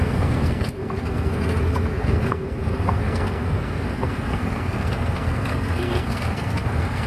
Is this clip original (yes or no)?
no